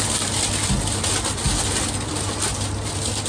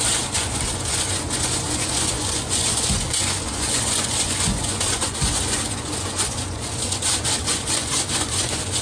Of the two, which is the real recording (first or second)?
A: first